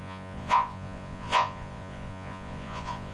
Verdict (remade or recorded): remade